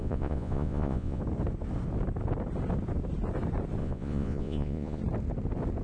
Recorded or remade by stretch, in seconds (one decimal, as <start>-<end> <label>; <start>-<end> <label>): 0.0-1.2 remade; 1.2-3.8 recorded; 3.8-5.0 remade; 5.0-5.8 recorded